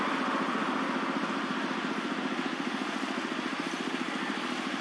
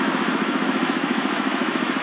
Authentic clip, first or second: first